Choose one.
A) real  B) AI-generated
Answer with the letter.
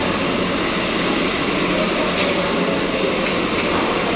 A